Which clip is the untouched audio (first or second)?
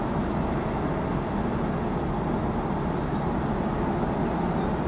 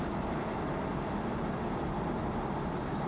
first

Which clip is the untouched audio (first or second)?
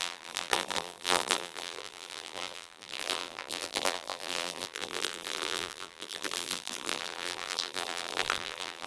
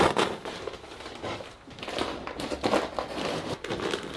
second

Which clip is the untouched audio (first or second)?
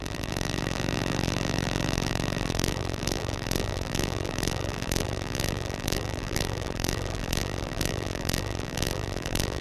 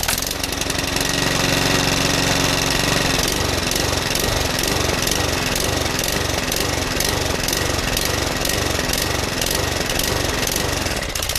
second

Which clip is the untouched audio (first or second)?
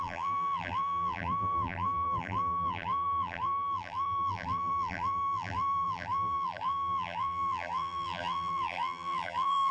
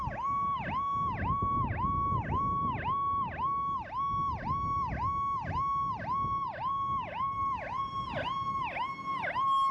second